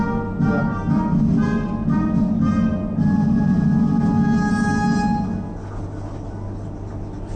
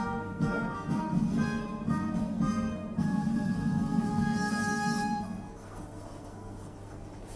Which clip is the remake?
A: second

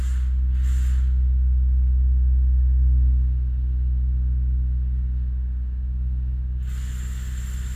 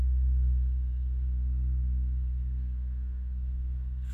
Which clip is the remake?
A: second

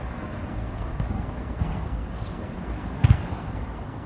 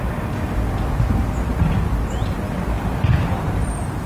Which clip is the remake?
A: first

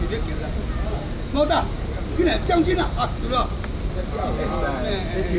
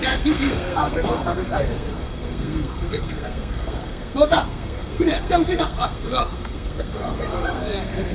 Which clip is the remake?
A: second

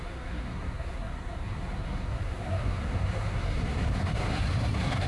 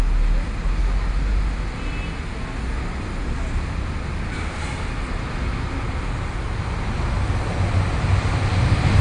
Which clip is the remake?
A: first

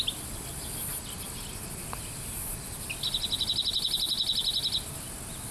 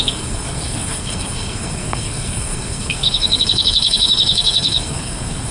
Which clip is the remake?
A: second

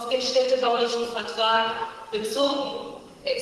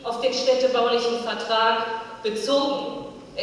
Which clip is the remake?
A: first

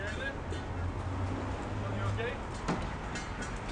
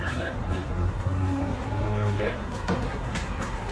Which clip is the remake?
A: second